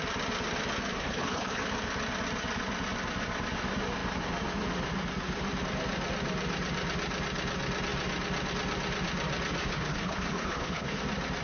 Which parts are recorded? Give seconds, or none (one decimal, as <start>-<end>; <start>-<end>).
0.0-0.9; 1.6-9.6; 11.0-11.4